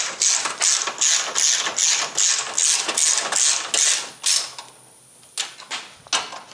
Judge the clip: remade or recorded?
recorded